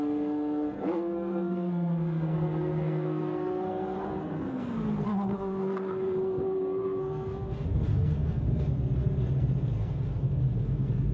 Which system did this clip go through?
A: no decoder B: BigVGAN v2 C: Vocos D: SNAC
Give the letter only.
D